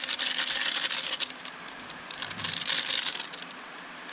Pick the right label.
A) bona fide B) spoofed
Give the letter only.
A